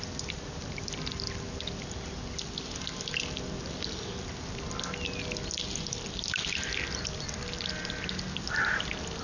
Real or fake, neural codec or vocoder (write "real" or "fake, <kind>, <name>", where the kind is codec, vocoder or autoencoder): real